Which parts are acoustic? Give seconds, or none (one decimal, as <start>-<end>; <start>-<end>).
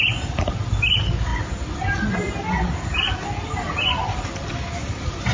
0.0-5.3